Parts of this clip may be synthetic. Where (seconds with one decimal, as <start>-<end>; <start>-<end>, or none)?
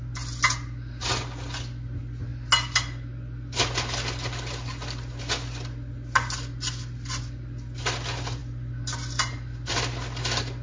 none